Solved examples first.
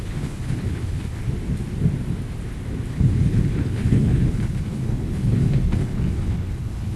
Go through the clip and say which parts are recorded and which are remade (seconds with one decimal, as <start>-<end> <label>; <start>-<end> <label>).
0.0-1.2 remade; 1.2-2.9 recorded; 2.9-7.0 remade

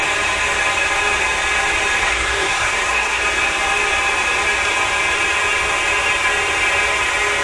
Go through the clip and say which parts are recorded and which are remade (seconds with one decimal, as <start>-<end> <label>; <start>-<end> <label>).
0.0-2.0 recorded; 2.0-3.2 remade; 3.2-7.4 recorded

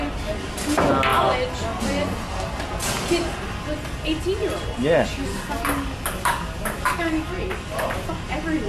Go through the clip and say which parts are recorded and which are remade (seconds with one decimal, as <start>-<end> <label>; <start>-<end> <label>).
0.0-5.3 recorded; 5.3-7.3 remade; 7.3-8.7 recorded

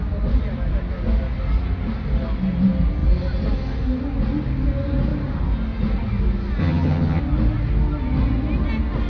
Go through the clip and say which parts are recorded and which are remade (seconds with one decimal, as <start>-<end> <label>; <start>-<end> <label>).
0.0-6.6 recorded; 6.6-7.2 remade; 7.2-9.1 recorded

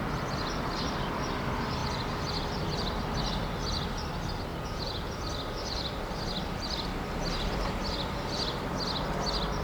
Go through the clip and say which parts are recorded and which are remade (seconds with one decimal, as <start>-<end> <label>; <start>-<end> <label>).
0.0-4.5 recorded; 4.5-5.1 remade; 5.1-9.6 recorded